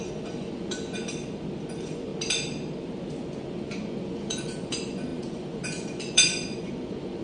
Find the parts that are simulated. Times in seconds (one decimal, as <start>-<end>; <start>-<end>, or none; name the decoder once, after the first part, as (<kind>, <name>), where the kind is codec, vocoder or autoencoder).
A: 0.0-1.0 (vocoder, Vocos); 1.7-2.1; 3.2-7.2